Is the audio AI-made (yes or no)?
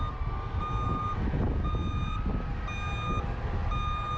no